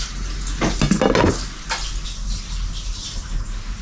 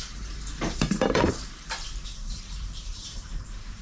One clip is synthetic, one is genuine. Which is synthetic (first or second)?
second